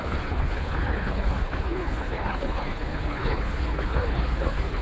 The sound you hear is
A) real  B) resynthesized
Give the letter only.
B